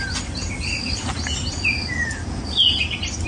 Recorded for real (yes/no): yes